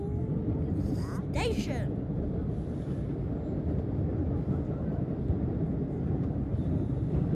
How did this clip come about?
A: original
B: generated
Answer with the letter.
A